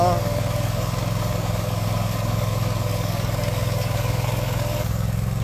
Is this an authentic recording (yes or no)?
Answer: no